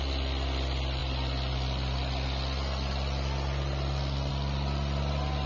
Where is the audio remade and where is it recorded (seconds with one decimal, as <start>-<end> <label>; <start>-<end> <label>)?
0.0-5.5 recorded